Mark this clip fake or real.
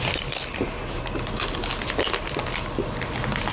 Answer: real